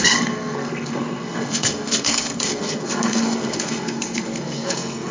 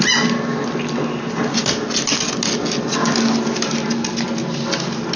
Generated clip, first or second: first